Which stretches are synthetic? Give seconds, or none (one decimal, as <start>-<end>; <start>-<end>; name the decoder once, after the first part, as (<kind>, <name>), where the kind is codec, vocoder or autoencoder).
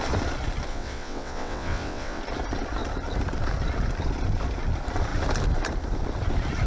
0.7-2.2 (vocoder, WaveNeXt)